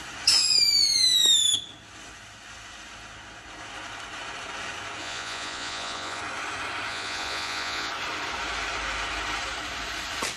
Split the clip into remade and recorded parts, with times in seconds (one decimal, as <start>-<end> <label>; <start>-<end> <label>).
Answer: 0.0-5.0 recorded; 5.0-6.2 remade; 6.2-6.9 recorded; 6.9-7.9 remade; 7.9-10.4 recorded